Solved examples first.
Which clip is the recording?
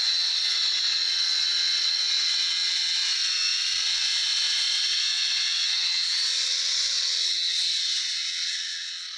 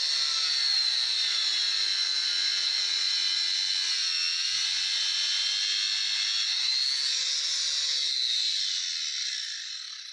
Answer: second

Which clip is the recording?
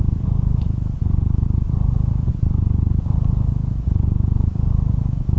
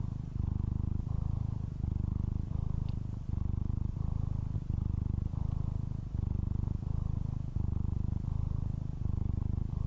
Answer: second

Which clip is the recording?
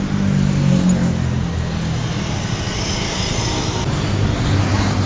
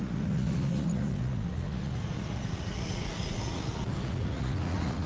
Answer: first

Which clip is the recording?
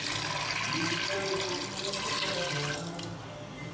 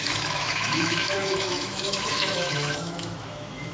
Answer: first